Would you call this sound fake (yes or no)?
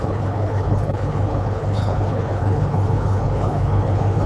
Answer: yes